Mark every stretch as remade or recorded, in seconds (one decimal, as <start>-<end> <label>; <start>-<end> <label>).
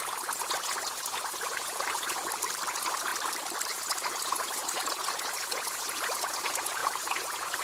0.0-2.2 remade; 2.2-2.7 recorded; 2.7-3.1 remade; 3.1-3.7 recorded; 3.7-7.6 remade